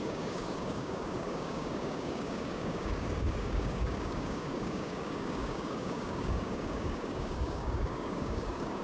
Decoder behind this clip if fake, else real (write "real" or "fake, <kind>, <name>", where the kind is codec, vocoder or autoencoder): fake, codec, DAC